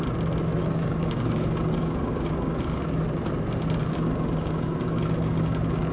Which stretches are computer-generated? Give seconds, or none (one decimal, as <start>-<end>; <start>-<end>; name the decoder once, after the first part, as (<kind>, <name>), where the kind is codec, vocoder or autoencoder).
0.6-3.0 (codec, DAC); 3.8-5.9

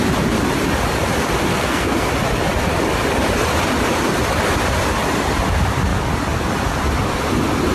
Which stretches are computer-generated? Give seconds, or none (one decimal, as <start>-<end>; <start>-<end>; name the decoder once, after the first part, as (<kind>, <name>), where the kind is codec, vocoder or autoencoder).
1.5-2.1 (codec, SNAC)

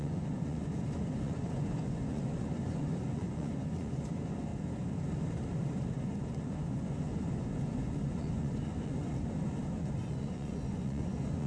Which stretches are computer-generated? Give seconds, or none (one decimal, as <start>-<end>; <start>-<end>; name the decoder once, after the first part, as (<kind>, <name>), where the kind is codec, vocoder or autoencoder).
0.0-4.5 (vocoder, Vocos); 5.9-11.5

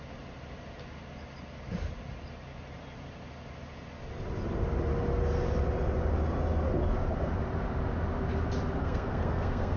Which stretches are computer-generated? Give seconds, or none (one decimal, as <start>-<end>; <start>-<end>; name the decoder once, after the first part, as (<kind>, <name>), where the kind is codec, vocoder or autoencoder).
8.8-9.8 (codec, SNAC)

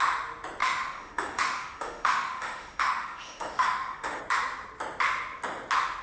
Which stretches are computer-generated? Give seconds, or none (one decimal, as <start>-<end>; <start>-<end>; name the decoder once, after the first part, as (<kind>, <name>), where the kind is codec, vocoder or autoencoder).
0.6-4.2 (autoencoder, DAC-VAE)